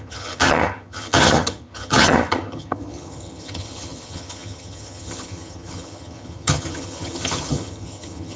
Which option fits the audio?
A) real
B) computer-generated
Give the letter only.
B